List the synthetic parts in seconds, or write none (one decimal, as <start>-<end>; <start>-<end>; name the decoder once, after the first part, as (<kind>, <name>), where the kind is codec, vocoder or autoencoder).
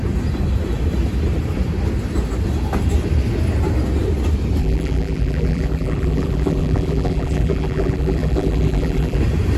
4.6-9.2 (vocoder, BigVGAN v2)